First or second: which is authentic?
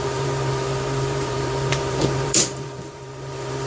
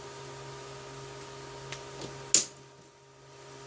second